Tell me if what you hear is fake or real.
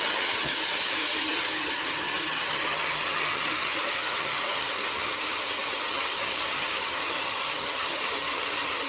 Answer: fake